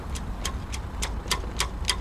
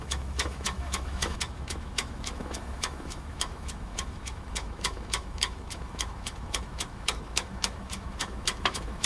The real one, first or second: first